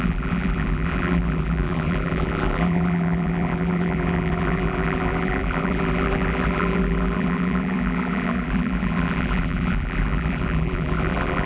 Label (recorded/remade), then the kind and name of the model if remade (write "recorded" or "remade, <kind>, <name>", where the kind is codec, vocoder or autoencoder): remade, vocoder, BigVGAN v2